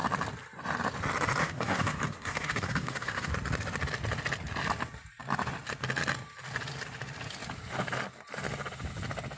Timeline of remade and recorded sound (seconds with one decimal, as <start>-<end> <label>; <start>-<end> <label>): 0.0-1.4 recorded; 1.4-3.3 remade; 3.3-9.4 recorded

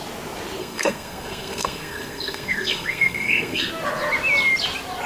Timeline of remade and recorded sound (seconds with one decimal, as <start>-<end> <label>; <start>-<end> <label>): 0.0-0.6 recorded; 0.6-3.7 remade; 3.7-5.1 recorded

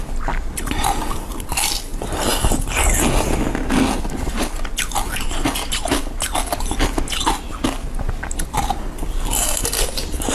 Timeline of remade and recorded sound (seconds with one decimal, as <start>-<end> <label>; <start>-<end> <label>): 0.0-10.3 recorded

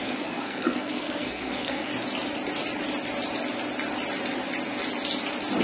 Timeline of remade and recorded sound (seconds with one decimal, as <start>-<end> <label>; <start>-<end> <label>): 0.0-1.9 remade; 1.9-5.6 recorded

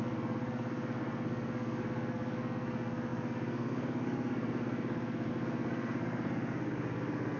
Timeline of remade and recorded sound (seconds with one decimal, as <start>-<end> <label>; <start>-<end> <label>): 0.0-7.4 remade

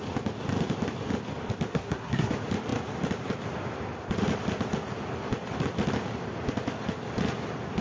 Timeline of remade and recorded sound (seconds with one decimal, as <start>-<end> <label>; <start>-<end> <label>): 0.0-1.7 recorded; 1.7-2.3 remade; 2.3-7.8 recorded

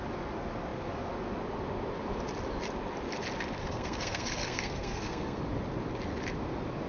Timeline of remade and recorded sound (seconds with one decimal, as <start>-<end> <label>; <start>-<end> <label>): 0.0-3.6 recorded; 3.6-5.4 remade; 5.4-6.9 recorded